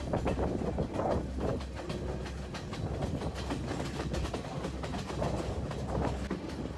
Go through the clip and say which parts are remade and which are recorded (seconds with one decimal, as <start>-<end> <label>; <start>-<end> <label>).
0.0-6.8 recorded